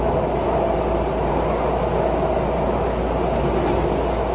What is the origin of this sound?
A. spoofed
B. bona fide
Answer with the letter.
B